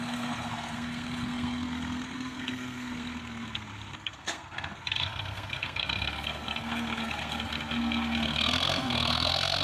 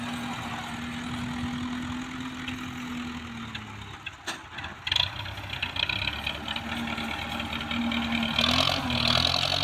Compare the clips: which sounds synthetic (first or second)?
first